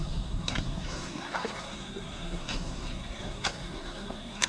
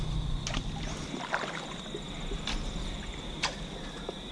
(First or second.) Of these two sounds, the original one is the second